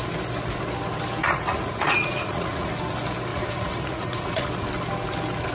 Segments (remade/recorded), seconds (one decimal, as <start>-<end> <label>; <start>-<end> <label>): 0.0-1.2 recorded; 1.2-2.7 remade; 2.7-3.3 recorded; 3.3-4.5 remade; 4.5-5.5 recorded